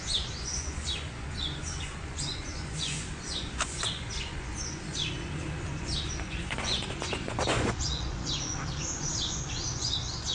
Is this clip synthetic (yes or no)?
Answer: yes